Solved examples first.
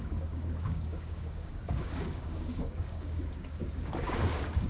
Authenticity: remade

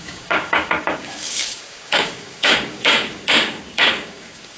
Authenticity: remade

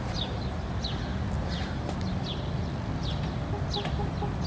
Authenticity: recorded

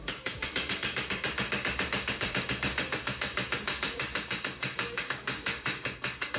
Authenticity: remade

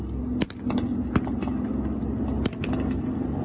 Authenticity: recorded